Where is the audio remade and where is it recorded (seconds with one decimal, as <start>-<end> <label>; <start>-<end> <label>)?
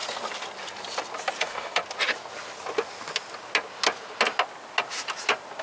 0.0-1.4 recorded; 1.4-1.8 remade; 1.8-5.6 recorded